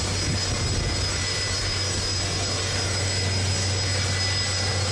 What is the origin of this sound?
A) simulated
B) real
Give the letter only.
B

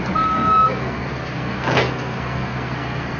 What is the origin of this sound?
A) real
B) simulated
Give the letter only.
B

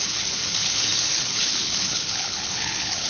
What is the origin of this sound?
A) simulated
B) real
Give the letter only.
A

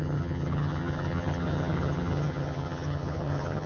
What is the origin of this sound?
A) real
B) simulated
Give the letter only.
B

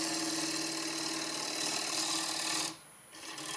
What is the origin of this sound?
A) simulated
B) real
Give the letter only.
B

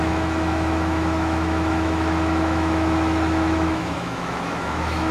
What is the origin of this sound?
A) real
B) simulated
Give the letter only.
B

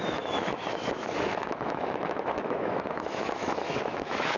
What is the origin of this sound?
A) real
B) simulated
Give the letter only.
B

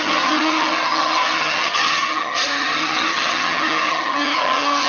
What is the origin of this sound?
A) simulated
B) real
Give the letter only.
A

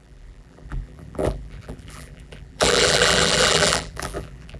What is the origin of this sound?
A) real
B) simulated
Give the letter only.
B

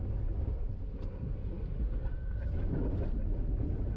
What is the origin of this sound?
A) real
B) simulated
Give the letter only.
B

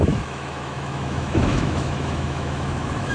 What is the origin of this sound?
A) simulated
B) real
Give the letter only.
A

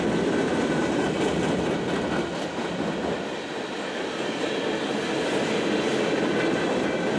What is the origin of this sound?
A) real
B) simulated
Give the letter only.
A